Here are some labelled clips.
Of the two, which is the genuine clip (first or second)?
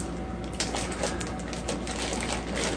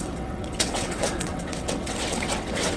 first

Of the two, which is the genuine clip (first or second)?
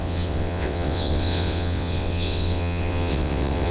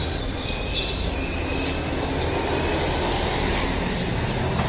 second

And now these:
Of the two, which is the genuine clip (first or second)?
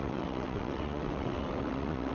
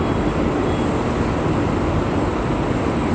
second